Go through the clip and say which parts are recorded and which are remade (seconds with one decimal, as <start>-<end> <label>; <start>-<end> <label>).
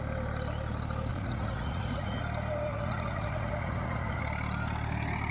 0.0-1.1 recorded; 1.1-2.2 remade; 2.2-2.7 recorded; 2.7-4.2 remade; 4.2-5.3 recorded